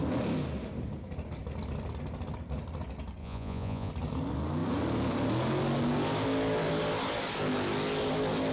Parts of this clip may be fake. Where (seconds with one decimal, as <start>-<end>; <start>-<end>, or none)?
3.2-3.9